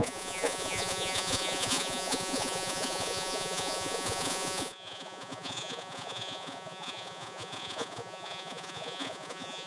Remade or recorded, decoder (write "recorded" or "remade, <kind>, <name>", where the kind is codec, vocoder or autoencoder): remade, vocoder, Vocos